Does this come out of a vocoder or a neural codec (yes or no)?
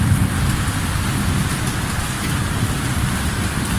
no